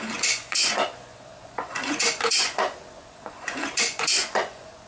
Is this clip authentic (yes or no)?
no